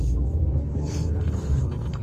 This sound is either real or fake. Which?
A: fake